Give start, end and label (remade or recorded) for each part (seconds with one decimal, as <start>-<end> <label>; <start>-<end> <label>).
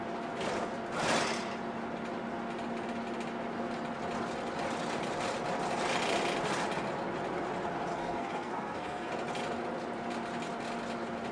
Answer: 0.0-7.9 recorded; 7.9-9.1 remade; 9.1-11.3 recorded